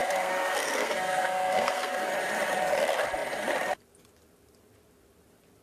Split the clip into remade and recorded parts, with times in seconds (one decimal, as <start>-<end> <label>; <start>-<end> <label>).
0.0-2.1 remade; 2.1-5.6 recorded